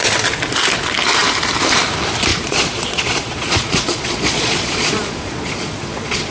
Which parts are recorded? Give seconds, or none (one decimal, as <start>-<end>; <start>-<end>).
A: 0.0-2.3